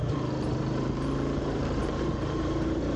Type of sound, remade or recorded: remade